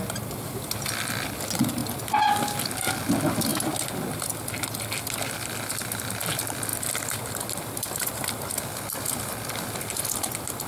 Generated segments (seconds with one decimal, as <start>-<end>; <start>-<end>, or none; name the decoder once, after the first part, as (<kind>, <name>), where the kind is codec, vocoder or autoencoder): none